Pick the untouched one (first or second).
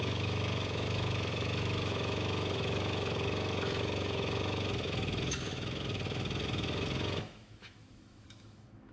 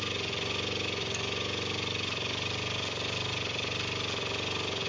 second